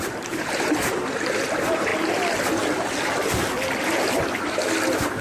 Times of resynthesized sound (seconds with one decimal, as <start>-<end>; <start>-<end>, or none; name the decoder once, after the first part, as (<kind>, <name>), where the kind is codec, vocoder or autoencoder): 0.0-1.9 (vocoder, BigVGAN v2)